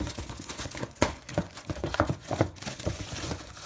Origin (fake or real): fake